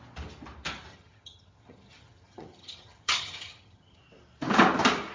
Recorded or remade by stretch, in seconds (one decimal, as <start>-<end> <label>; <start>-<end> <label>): 0.0-0.9 recorded; 0.9-4.0 remade; 4.0-5.1 recorded

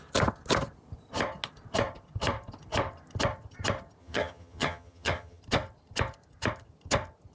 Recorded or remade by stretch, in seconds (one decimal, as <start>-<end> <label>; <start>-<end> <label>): 0.0-4.0 recorded; 4.0-5.4 remade; 5.4-7.3 recorded

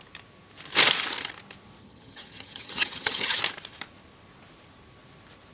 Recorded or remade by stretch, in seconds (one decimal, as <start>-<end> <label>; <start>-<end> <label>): 0.0-1.8 recorded; 1.8-3.4 remade; 3.4-5.5 recorded